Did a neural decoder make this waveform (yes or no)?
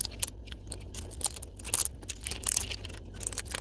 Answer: no